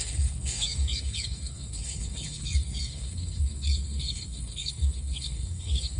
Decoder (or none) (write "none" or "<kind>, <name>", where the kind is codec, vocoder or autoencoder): codec, SNAC